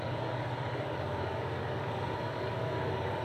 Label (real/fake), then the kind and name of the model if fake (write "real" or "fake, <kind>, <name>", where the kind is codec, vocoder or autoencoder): fake, codec, DAC